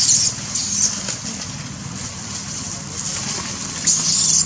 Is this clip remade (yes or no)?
no